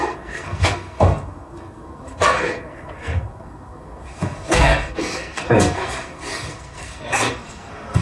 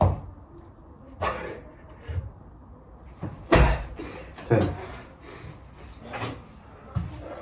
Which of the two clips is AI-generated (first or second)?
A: first